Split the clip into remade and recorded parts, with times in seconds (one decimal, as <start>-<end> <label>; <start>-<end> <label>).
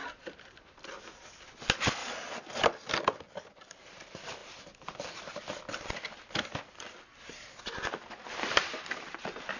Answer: 0.0-2.0 recorded; 2.0-3.2 remade; 3.2-8.2 recorded; 8.2-9.2 remade; 9.2-9.6 recorded